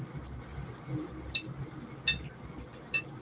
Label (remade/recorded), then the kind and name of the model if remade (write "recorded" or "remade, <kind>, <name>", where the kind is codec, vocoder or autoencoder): recorded